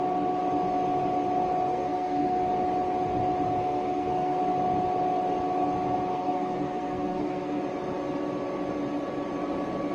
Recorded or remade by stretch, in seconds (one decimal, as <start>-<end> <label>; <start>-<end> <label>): 0.0-1.7 recorded; 1.7-2.5 remade; 2.5-3.6 recorded; 3.6-4.4 remade; 4.4-6.1 recorded; 6.1-7.6 remade; 7.6-9.9 recorded